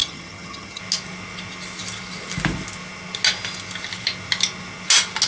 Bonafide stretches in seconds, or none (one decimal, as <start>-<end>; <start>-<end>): 0.8-5.3